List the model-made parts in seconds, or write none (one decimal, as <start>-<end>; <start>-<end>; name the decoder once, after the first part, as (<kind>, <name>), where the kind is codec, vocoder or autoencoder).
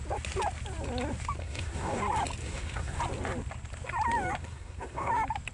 1.4-2.0 (codec, SNAC); 2.4-3.0; 4.4-5.1